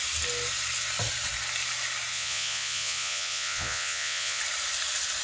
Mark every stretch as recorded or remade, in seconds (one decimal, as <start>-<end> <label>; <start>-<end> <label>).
0.0-2.1 recorded; 2.1-4.4 remade; 4.4-5.2 recorded